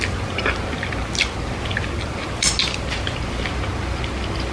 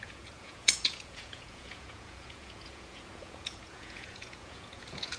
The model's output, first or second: second